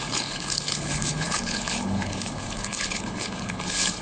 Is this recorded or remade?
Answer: remade